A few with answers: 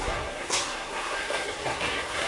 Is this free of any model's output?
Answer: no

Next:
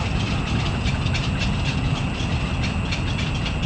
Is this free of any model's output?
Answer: yes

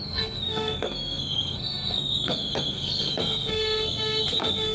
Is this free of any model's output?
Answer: no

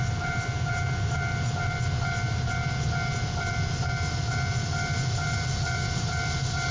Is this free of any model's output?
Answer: no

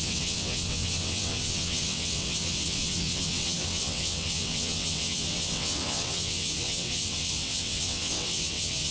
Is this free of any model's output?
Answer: no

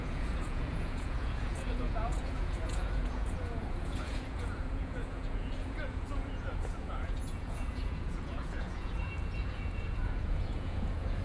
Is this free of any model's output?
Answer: no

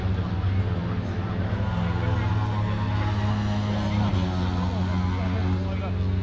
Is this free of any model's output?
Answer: yes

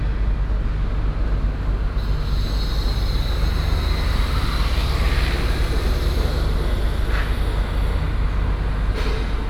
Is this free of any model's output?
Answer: yes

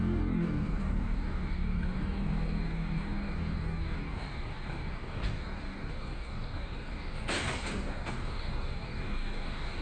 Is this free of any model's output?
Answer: no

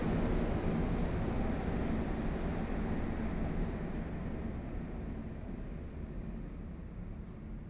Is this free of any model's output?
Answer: yes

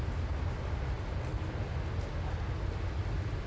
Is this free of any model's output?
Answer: yes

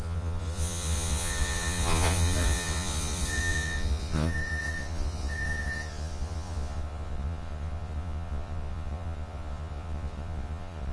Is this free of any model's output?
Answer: no